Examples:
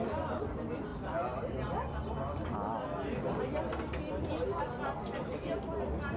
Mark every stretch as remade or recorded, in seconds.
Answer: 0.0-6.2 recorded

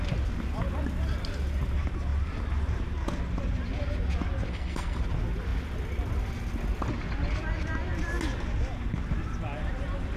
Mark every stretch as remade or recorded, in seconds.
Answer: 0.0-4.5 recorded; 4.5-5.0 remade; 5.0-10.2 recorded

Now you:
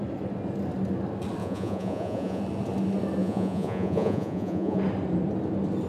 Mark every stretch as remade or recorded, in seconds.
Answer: 0.0-1.4 recorded; 1.4-2.4 remade; 2.4-3.2 recorded; 3.2-4.8 remade; 4.8-5.9 recorded

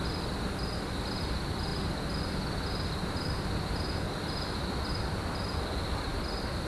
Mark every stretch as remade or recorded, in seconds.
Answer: 0.0-6.7 recorded